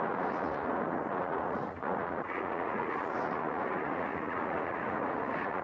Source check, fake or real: fake